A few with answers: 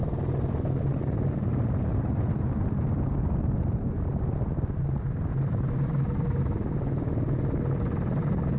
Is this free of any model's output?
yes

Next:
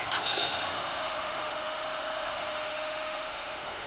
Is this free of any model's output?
no